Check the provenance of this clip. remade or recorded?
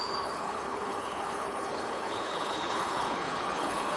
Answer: remade